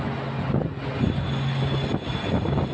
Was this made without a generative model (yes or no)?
yes